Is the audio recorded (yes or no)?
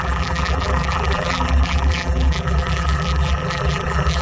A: no